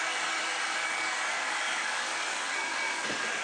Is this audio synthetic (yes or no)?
yes